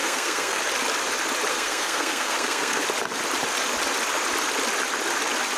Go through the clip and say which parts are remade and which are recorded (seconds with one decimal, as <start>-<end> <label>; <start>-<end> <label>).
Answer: 0.0-0.6 remade; 0.6-1.5 recorded; 1.5-2.8 remade; 2.8-5.6 recorded